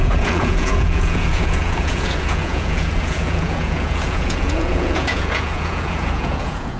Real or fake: fake